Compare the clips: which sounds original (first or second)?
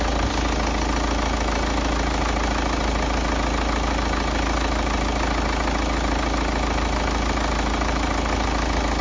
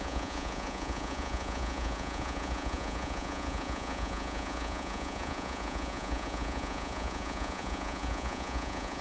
first